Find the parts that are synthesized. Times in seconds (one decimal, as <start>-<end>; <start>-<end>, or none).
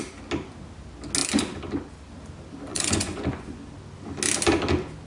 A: 2.7-3.6